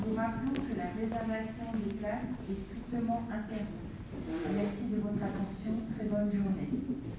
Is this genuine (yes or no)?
yes